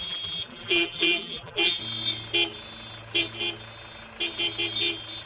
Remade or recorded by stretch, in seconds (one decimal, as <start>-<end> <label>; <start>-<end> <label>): 0.0-1.8 remade; 1.8-5.3 recorded